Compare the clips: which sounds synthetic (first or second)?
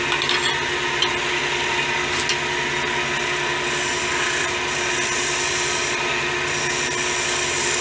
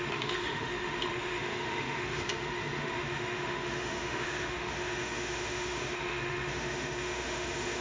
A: second